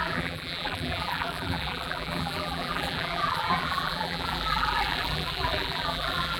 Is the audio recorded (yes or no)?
no